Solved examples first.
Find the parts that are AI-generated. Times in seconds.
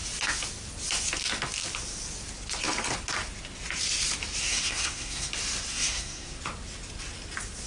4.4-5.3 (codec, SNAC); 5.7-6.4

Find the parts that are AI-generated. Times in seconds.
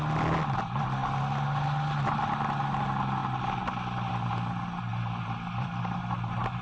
none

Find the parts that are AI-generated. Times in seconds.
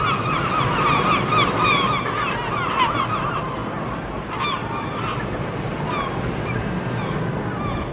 none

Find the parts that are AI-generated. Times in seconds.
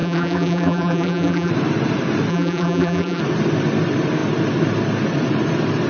0.0-1.5 (vocoder, BigVGAN v2); 2.3-3.2